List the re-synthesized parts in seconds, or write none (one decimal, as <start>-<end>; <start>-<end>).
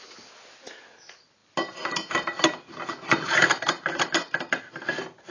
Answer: none